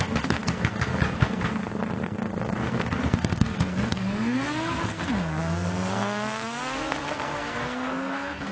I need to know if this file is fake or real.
fake